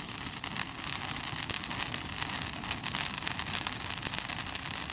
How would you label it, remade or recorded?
recorded